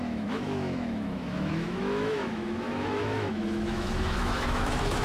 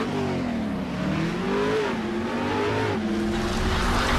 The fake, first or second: first